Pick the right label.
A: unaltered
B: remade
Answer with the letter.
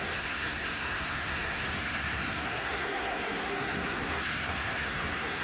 B